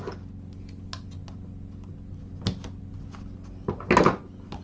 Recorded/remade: recorded